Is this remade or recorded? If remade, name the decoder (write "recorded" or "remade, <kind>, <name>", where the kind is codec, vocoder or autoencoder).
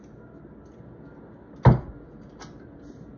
recorded